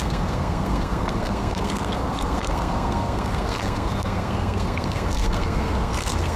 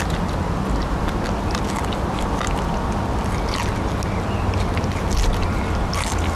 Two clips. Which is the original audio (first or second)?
second